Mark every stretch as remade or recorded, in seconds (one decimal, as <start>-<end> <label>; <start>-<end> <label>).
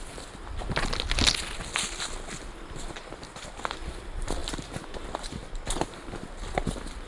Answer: 0.0-7.1 recorded